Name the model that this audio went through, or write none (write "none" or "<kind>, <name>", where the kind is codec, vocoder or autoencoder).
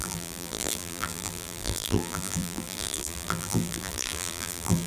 vocoder, BigVGAN v2